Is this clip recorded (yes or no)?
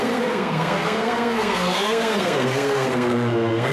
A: no